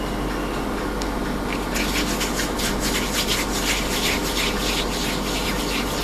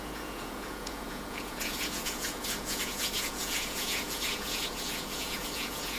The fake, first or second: second